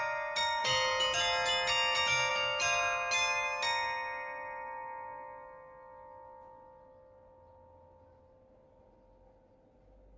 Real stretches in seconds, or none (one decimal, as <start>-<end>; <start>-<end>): 0.0-10.2